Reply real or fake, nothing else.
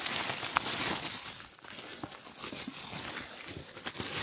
real